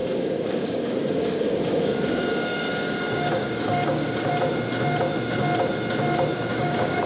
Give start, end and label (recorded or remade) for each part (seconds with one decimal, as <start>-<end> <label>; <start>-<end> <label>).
0.0-4.3 remade; 4.3-6.5 recorded; 6.5-7.1 remade